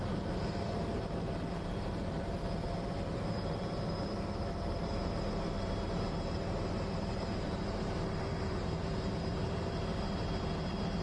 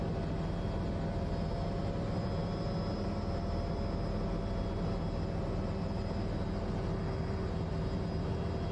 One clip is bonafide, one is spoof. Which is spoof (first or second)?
first